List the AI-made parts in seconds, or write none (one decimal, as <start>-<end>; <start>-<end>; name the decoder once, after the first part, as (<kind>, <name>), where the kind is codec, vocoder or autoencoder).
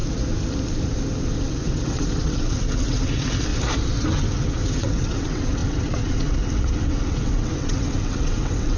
1.5-3.5 (vocoder, WaveNeXt); 4.0-8.8